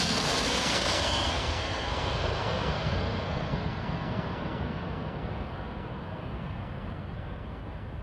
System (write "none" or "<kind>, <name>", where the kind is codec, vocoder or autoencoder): codec, SNAC